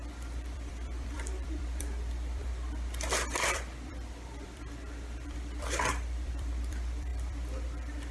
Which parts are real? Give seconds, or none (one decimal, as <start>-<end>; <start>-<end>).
none